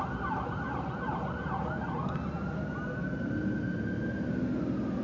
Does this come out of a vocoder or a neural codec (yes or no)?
no